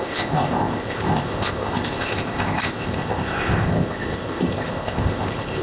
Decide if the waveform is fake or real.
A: fake